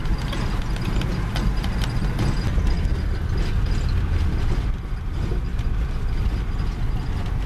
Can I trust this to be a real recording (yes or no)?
yes